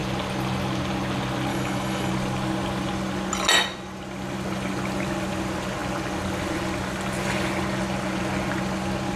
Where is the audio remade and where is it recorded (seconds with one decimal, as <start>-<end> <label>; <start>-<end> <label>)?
0.0-1.5 recorded; 1.5-2.1 remade; 2.1-9.2 recorded